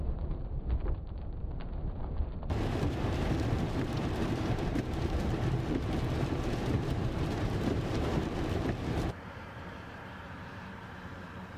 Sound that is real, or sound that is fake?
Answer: fake